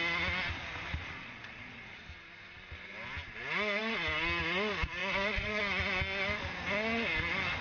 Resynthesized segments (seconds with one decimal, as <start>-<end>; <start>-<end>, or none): 1.0-2.0; 5.0-5.6